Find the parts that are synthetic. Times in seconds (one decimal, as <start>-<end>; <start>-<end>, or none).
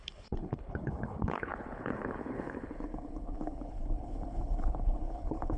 0.0-5.6